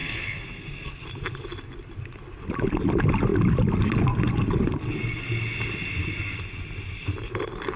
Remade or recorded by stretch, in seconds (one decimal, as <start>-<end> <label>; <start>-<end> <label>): 0.0-0.9 remade; 0.9-7.8 recorded